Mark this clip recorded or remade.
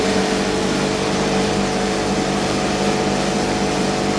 remade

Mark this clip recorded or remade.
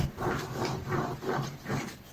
recorded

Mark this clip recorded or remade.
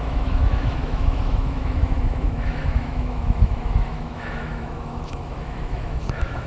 remade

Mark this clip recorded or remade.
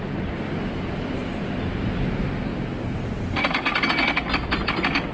recorded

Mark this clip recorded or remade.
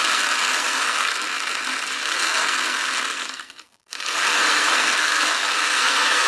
remade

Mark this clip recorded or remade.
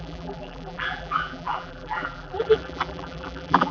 remade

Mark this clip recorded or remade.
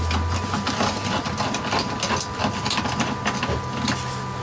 recorded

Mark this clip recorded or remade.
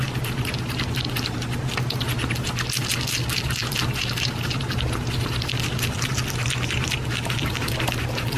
recorded